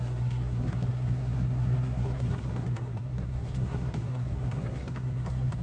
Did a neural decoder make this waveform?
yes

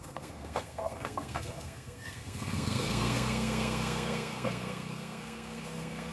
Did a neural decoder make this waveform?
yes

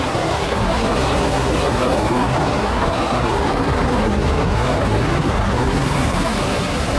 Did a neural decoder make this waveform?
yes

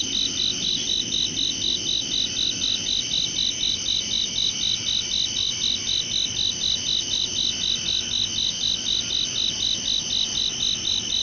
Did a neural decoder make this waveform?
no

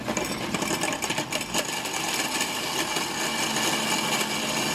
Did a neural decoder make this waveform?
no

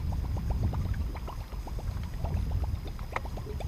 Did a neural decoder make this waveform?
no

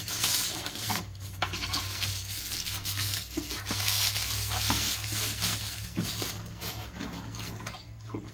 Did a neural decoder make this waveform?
yes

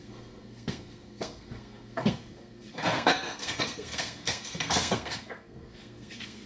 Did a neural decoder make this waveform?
yes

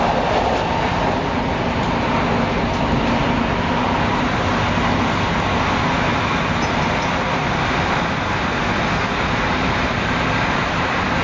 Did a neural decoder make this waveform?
no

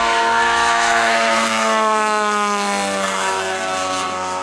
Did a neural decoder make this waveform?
yes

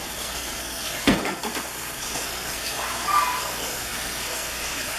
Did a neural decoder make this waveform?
yes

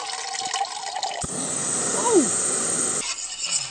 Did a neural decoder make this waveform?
no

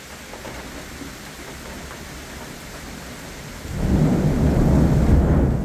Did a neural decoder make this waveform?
no